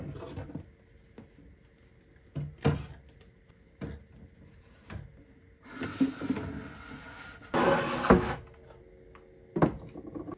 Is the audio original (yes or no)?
yes